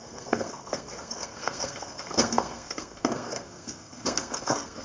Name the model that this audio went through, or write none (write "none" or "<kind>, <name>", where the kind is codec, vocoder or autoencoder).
codec, SNAC